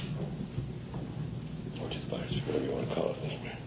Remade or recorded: recorded